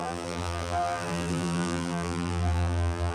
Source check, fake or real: fake